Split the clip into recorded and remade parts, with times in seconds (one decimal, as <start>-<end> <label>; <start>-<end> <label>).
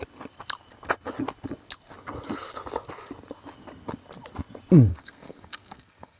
0.0-4.9 recorded; 4.9-6.2 remade